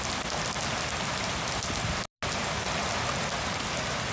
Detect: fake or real real